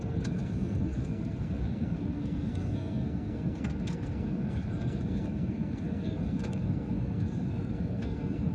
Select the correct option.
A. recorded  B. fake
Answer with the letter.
B